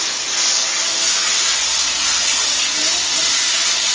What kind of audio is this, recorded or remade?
recorded